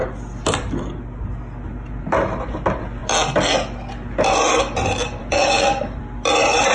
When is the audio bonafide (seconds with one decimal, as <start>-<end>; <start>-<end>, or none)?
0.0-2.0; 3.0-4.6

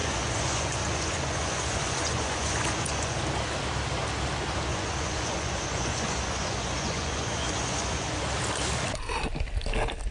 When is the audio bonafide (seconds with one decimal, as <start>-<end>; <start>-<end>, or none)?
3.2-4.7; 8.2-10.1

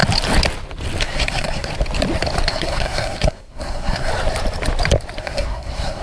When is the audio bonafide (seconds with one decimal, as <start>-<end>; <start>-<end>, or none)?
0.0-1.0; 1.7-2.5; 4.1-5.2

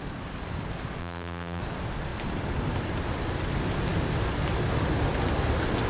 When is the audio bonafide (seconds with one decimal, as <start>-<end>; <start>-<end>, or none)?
0.0-1.0; 1.6-5.9